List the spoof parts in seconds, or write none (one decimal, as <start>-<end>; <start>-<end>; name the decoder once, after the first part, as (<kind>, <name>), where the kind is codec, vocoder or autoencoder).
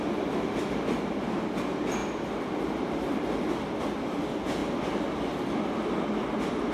none